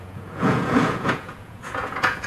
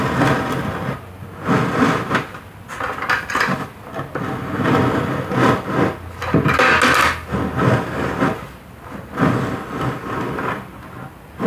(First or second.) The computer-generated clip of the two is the first